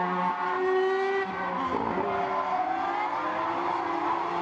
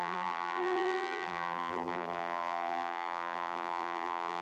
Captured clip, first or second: first